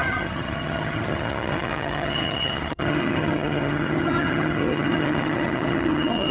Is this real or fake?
fake